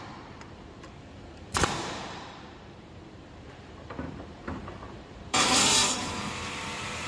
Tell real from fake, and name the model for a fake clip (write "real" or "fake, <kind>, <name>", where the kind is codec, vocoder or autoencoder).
fake, vocoder, BigVGAN v2